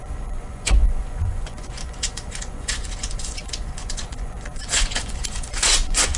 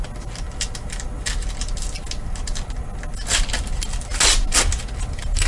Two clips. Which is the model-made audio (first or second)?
first